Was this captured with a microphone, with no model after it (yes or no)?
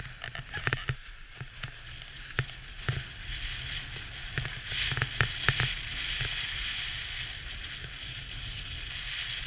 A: yes